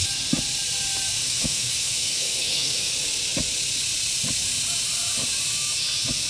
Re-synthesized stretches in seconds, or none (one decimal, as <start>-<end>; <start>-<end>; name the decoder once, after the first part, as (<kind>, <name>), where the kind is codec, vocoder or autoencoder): 1.2-2.9 (autoencoder, DAC-VAE)

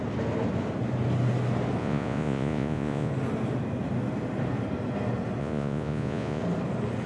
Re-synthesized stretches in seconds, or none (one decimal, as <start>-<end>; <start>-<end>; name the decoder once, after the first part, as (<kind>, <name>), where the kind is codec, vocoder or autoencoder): 1.8-3.1 (vocoder, Vocos); 5.4-6.4

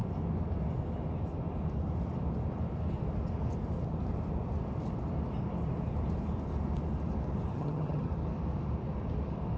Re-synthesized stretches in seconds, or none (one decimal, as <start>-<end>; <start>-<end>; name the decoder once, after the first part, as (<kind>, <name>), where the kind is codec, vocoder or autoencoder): 7.5-8.1 (vocoder, HiFi-GAN)

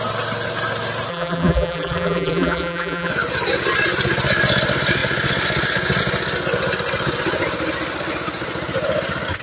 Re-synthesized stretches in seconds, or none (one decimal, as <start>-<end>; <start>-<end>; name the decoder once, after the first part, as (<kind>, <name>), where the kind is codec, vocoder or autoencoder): 1.1-3.1 (vocoder, BigVGAN v2)

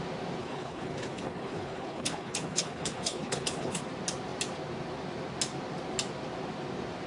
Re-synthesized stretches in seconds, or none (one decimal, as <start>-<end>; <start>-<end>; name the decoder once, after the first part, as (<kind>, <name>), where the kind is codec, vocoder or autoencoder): 0.4-3.8 (codec, HILCodec)

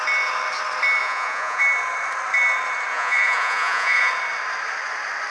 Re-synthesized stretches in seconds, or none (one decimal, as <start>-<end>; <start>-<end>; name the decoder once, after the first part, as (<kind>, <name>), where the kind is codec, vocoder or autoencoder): 1.0-1.6 (vocoder, Vocos); 2.9-4.1